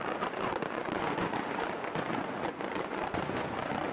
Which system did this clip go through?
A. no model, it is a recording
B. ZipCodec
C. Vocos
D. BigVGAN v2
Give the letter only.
C